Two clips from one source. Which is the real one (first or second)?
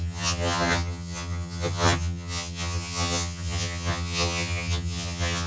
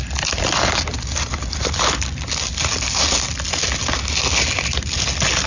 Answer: second